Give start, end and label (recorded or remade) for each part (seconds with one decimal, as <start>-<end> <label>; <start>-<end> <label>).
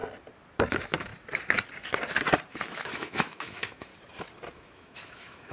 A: 0.0-0.7 recorded; 0.7-1.1 remade; 1.1-2.5 recorded; 2.5-3.9 remade; 3.9-4.5 recorded; 4.5-5.5 remade